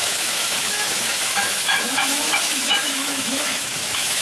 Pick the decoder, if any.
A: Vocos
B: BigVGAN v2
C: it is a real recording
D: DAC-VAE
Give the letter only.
D